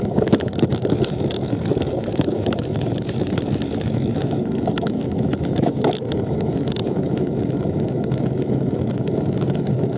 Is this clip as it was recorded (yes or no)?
no